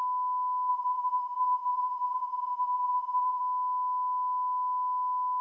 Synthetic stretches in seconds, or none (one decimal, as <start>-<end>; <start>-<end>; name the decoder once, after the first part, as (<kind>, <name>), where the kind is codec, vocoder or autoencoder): 0.7-3.4 (vocoder, Vocos)